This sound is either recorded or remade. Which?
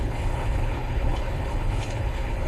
remade